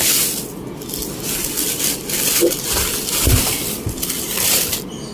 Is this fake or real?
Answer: real